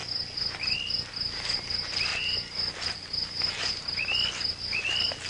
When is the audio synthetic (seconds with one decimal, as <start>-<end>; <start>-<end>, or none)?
none